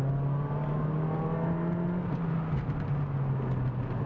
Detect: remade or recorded recorded